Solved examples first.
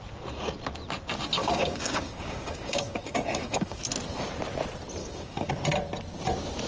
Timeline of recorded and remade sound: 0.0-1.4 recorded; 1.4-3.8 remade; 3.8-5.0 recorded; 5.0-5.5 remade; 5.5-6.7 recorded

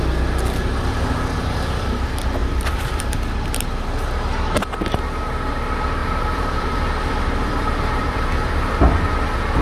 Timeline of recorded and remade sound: 0.0-2.4 recorded; 2.4-3.0 remade; 3.0-6.0 recorded; 6.0-8.8 remade; 8.8-9.6 recorded

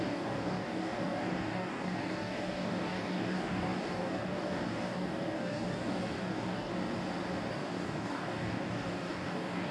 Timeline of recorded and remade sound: 0.0-6.7 remade; 6.7-7.5 recorded; 7.5-9.7 remade

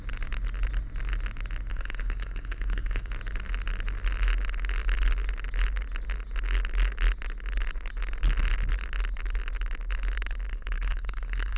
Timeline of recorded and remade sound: 0.0-1.7 recorded; 1.7-3.1 remade; 3.1-10.5 recorded; 10.5-11.6 remade